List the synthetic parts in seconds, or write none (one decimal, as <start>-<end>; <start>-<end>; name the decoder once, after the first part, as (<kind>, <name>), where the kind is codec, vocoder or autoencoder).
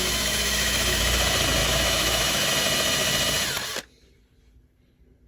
0.0-1.0 (autoencoder, DAC-VAE); 1.6-2.5